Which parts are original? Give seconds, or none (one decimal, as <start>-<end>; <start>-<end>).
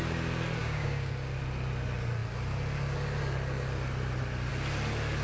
0.0-0.6; 1.1-5.2